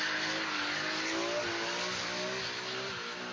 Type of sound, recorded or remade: recorded